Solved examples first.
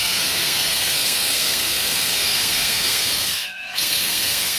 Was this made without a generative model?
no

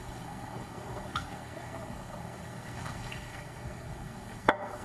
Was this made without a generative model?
no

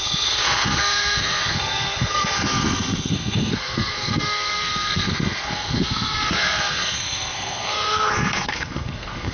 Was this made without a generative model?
no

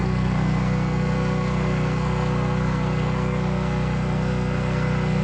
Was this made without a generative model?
no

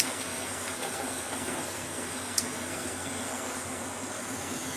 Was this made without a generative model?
no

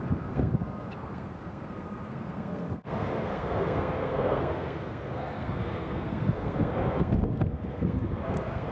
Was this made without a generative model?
no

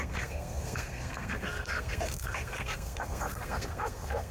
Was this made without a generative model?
no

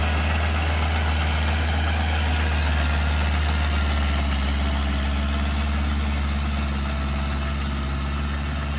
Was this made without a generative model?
yes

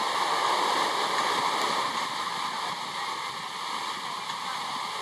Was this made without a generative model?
yes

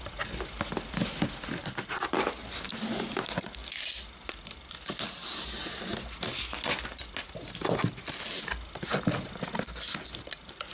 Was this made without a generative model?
yes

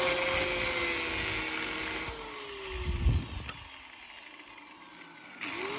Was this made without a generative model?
yes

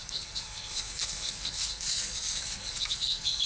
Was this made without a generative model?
no